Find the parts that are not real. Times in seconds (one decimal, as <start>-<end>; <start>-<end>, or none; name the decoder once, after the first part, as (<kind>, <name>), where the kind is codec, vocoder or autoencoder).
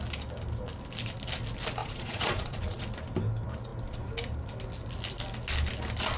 1.8-2.8 (vocoder, Vocos)